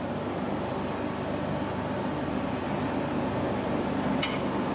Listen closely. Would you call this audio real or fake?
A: real